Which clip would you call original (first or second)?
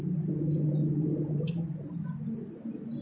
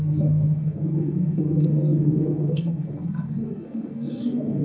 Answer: first